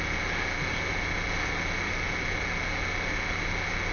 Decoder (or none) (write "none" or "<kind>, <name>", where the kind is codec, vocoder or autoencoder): none